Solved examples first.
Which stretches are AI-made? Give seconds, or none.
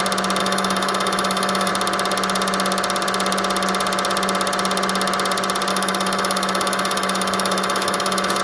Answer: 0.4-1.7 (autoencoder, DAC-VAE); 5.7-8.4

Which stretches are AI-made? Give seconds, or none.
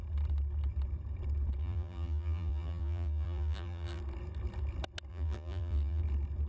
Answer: 1.6-4.0 (vocoder, BigVGAN v2); 5.1-6.0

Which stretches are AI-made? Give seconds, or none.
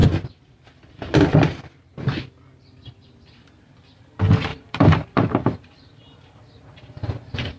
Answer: 4.5-6.4 (vocoder, BigVGAN v2)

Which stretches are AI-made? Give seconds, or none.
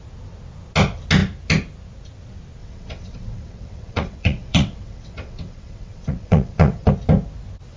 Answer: 2.6-6.9 (vocoder, WaveNeXt)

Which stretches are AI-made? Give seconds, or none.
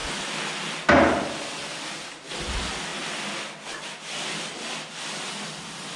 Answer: none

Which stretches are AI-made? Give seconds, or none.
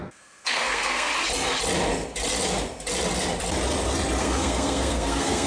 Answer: 0.0-1.1 (codec, SNAC); 4.2-5.5